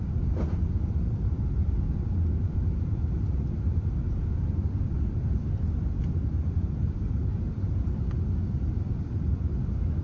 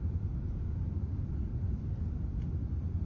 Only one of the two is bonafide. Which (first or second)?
second